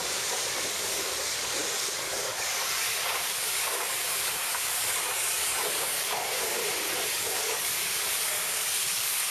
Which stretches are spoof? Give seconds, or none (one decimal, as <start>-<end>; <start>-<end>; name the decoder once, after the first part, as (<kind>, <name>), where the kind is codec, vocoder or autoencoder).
0.0-6.6 (codec, DAC); 7.1-9.3